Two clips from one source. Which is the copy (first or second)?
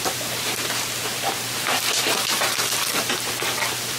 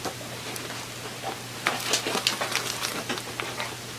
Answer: first